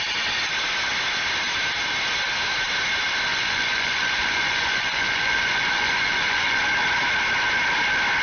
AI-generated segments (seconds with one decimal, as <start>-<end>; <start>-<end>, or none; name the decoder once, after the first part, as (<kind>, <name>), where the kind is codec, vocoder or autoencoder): 3.3-6.6 (vocoder, Vocos)